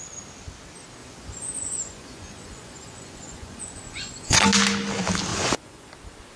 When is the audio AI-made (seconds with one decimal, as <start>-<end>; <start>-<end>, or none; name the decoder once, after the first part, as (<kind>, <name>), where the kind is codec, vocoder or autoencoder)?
1.0-4.4 (vocoder, Vocos); 5.3-5.9